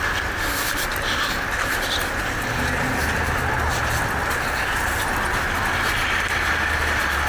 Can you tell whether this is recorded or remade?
recorded